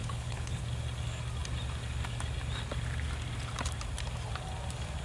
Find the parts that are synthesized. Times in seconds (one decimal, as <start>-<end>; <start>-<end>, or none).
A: 0.0-0.6